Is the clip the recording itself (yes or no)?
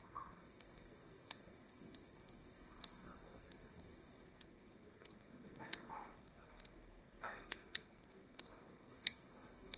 no